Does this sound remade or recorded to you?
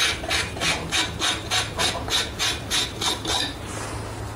recorded